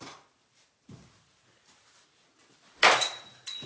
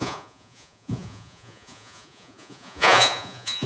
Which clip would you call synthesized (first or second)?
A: second